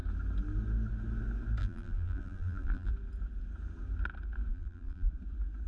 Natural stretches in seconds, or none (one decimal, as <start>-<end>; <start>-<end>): 0.0-1.6; 2.9-4.5; 5.1-5.7